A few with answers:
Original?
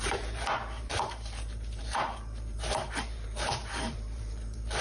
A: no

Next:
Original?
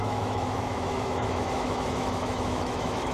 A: no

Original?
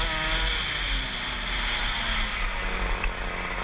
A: yes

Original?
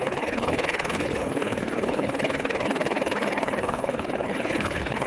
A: no